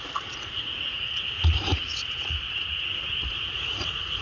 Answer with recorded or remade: remade